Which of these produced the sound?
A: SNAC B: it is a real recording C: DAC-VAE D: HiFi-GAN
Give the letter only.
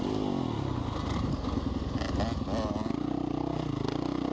B